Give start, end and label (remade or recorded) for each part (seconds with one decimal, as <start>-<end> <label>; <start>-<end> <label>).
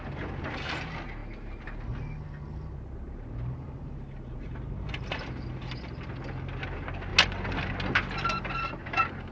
0.0-9.3 recorded